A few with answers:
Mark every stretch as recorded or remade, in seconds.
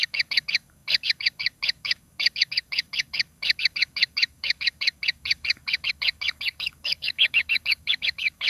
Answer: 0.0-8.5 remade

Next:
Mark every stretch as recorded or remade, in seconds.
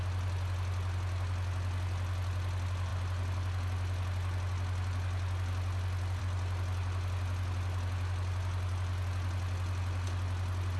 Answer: 0.0-10.8 recorded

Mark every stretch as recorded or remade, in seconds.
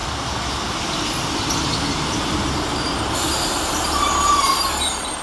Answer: 0.0-2.2 recorded; 2.2-5.2 remade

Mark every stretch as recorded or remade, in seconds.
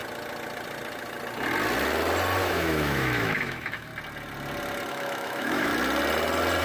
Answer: 0.0-2.4 recorded; 2.4-3.9 remade; 3.9-4.9 recorded; 4.9-5.7 remade; 5.7-6.6 recorded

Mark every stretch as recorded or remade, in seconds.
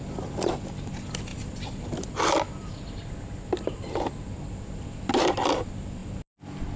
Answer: 0.0-6.8 recorded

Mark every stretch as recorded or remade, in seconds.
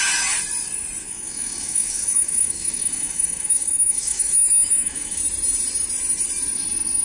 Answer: 0.0-1.0 recorded; 1.0-5.2 remade; 5.2-7.0 recorded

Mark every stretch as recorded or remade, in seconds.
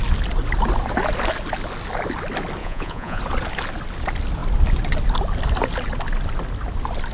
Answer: 0.0-2.6 recorded; 2.6-3.2 remade; 3.2-7.1 recorded